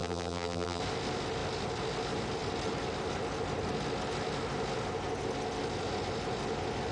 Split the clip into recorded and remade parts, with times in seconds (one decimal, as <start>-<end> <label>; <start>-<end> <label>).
0.0-0.8 remade; 0.8-6.9 recorded